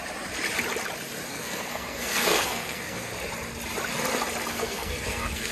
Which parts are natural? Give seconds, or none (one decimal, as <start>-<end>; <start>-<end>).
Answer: 0.0-1.3; 3.1-4.5